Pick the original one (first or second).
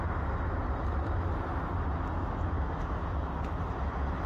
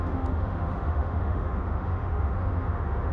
first